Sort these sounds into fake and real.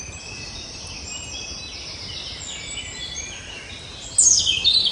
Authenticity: real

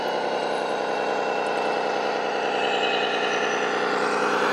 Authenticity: real